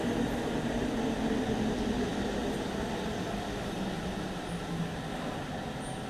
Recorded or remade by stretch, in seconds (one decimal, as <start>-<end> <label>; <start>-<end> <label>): 0.0-6.1 recorded